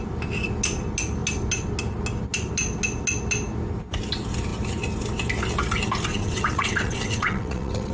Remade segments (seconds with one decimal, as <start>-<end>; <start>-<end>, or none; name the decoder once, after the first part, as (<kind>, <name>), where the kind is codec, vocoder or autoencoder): 6.1-7.9 (vocoder, WaveNeXt)

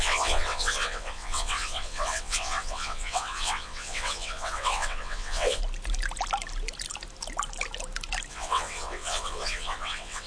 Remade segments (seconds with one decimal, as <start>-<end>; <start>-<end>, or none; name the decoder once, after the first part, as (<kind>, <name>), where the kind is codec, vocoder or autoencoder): 0.0-5.6 (vocoder, WaveNeXt); 8.3-10.3

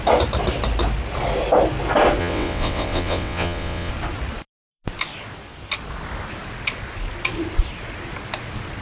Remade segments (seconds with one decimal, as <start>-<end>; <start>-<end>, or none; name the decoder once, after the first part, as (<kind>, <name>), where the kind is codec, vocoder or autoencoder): 2.2-3.9 (vocoder, WaveNeXt)

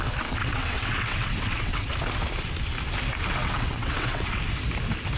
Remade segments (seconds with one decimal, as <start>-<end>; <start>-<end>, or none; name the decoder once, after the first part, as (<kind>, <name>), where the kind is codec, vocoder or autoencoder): 0.4-1.9 (vocoder, WaveNeXt); 3.4-4.4

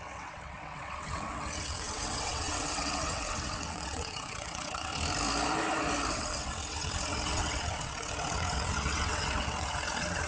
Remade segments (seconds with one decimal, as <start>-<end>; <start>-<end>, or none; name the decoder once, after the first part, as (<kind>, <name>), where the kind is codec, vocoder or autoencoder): 0.0-4.9 (vocoder, WaveNeXt); 6.1-10.3

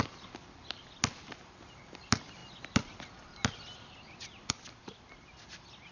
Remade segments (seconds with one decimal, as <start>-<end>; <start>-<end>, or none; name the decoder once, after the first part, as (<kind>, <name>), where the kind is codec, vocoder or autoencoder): none

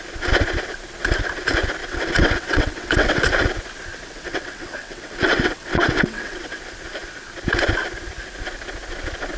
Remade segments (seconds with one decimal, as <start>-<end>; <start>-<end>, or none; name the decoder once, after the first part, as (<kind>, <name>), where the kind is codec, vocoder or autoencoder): 1.8-3.2 (vocoder, WaveNeXt); 3.9-6.6

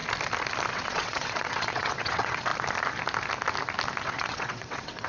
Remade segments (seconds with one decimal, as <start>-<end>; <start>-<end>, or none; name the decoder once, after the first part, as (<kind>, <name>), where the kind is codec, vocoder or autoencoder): 0.7-2.5 (vocoder, WaveNeXt); 4.0-5.1